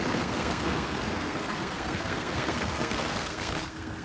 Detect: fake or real fake